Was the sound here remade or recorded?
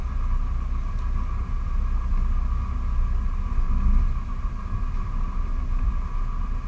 recorded